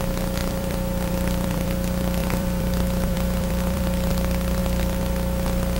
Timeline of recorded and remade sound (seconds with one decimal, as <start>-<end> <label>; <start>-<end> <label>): 0.0-0.4 recorded; 0.4-1.7 remade; 1.7-2.2 recorded; 2.2-4.1 remade; 4.1-5.8 recorded